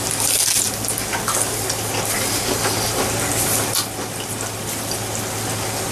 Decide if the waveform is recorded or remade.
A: recorded